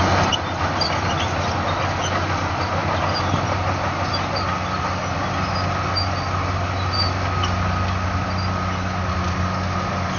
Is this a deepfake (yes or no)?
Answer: no